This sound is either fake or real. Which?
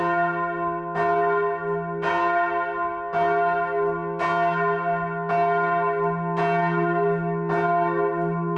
real